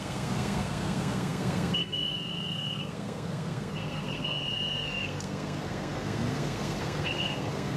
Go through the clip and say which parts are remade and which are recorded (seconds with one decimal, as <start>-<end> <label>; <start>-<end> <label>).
0.0-7.8 remade

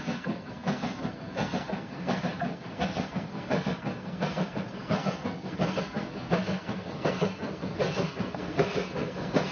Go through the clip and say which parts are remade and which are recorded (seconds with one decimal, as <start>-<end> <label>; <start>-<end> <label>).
0.0-9.5 remade

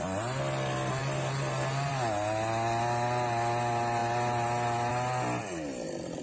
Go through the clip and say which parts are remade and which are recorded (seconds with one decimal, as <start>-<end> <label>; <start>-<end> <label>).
0.0-6.2 recorded

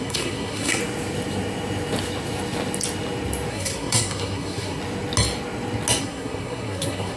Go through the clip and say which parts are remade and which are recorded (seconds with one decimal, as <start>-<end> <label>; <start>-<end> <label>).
0.0-0.8 remade; 0.8-3.5 recorded; 3.5-4.8 remade; 4.8-6.0 recorded; 6.0-7.2 remade

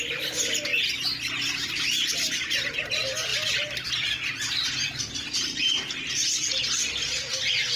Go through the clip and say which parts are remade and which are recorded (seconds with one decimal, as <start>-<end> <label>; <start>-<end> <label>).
0.0-7.8 recorded

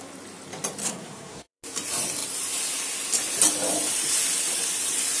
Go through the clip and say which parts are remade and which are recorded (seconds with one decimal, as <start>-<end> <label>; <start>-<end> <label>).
0.0-0.8 recorded; 0.8-1.6 remade; 1.6-5.2 recorded